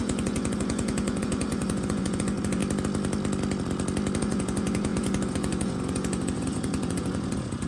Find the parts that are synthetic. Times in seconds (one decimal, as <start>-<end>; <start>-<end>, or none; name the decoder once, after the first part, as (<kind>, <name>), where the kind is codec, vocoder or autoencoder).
0.0-2.6 (vocoder, Vocos); 4.2-7.7